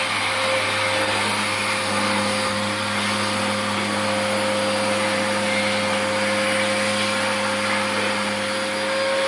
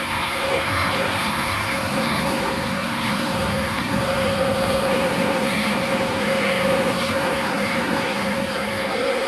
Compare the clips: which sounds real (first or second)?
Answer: first